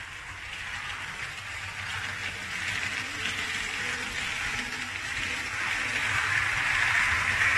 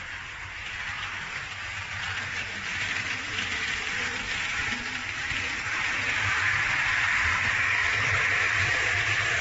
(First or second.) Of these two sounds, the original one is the first